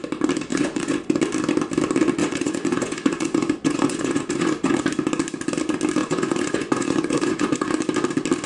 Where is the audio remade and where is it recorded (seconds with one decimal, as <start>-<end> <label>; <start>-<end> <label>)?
0.0-0.5 recorded; 0.5-1.2 remade; 1.2-2.2 recorded; 2.2-4.8 remade; 4.8-6.0 recorded; 6.0-7.7 remade; 7.7-8.5 recorded